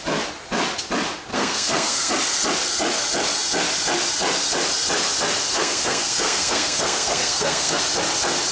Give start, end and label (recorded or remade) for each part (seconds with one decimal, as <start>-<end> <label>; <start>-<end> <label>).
0.0-1.3 recorded; 1.3-2.1 remade; 2.1-5.5 recorded; 5.5-7.8 remade; 7.8-8.5 recorded